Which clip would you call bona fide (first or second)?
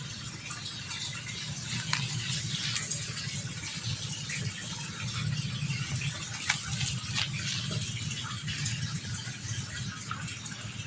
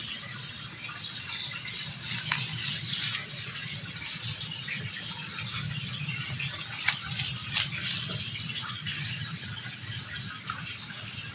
first